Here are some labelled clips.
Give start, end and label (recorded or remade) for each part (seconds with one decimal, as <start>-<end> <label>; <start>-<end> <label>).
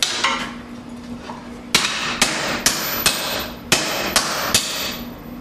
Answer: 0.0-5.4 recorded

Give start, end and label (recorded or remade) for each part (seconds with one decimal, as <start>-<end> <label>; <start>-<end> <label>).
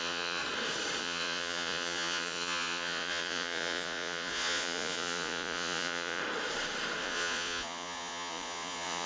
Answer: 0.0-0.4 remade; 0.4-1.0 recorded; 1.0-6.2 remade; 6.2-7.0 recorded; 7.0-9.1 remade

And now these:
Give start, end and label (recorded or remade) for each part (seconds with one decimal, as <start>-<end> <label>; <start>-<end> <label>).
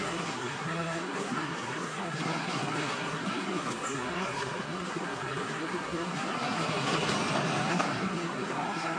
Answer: 0.0-7.1 remade; 7.1-7.7 recorded; 7.7-9.0 remade